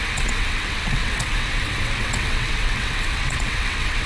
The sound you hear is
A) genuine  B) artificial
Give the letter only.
B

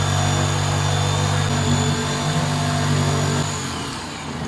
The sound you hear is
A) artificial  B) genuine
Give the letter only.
B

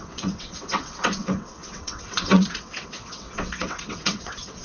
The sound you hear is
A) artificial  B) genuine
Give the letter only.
A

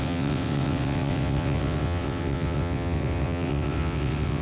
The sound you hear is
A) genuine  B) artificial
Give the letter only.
B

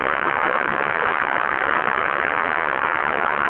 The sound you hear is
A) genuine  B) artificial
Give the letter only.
B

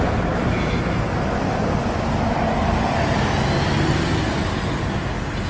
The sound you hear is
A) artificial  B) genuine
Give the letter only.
B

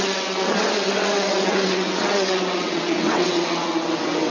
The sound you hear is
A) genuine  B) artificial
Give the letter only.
B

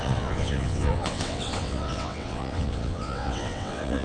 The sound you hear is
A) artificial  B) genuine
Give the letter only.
A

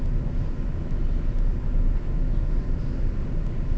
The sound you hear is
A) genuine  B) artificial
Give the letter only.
A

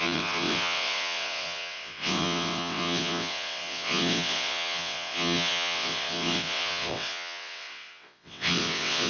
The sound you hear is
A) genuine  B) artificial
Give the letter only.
B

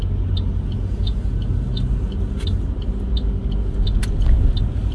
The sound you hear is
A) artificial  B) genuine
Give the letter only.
B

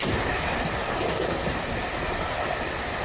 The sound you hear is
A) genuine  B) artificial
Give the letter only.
A